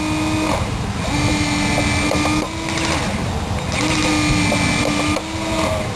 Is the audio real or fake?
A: real